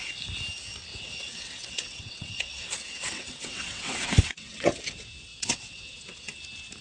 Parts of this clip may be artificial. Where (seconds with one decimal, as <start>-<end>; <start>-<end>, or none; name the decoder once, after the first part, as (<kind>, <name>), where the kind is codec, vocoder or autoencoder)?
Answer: 0.9-4.8 (vocoder, WaveNeXt); 5.3-6.3